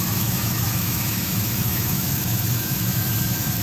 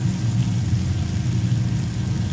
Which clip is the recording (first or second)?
second